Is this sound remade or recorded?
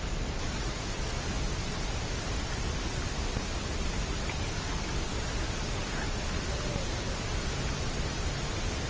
recorded